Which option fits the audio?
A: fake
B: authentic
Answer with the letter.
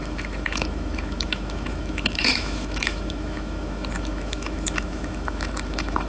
A